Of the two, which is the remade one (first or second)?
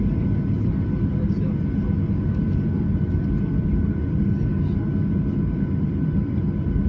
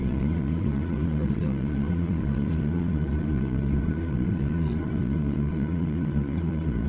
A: second